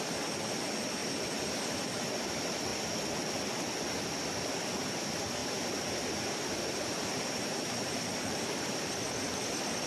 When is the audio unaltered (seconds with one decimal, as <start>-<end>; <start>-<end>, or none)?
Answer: 0.0-1.0; 1.8-5.4; 8.9-9.9

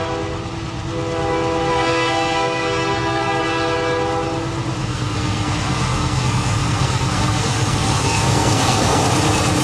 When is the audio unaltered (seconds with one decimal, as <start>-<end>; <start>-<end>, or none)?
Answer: 0.0-1.7; 3.4-4.8; 9.0-9.6

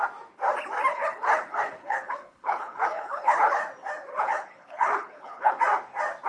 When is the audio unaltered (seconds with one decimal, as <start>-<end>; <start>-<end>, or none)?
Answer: 0.0-0.9; 3.6-4.1; 5.6-6.3